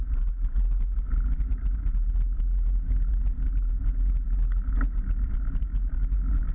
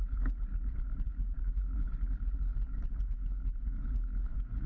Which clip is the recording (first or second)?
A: first